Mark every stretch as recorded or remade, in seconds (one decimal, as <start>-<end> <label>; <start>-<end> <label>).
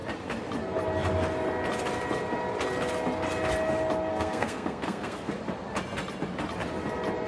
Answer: 0.0-4.1 recorded; 4.1-5.3 remade; 5.3-7.3 recorded